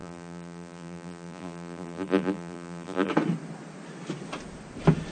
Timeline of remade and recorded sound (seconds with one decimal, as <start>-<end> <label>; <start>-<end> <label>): 0.0-3.1 remade; 3.1-5.1 recorded